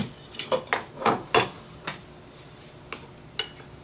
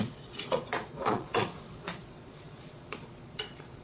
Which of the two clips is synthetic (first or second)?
second